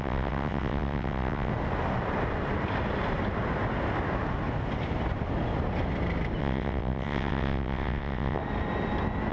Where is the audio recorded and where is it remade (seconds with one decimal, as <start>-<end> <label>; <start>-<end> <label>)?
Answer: 0.0-1.5 remade; 1.5-6.4 recorded; 6.4-8.4 remade; 8.4-9.3 recorded